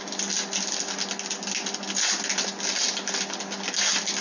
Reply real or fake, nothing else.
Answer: real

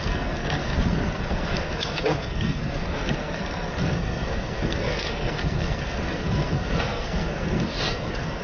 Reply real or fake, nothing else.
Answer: fake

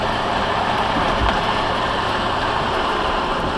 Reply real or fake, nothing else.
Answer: fake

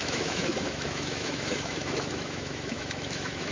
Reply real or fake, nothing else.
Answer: fake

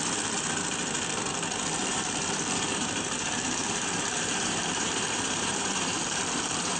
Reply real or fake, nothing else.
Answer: fake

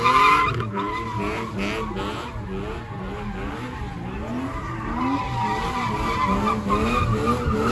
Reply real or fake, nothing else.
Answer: real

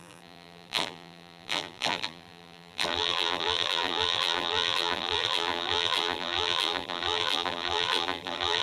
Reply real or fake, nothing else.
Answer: fake